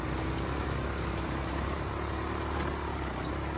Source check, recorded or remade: recorded